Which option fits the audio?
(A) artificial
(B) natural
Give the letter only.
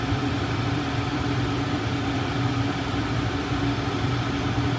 A